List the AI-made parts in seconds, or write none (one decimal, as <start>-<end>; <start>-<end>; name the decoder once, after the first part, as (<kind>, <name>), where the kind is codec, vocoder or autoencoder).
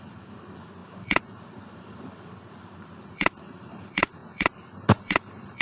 0.0-5.6 (vocoder, BigVGAN v2)